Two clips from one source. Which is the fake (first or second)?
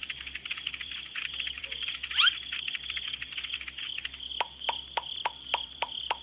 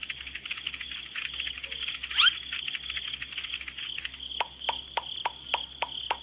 first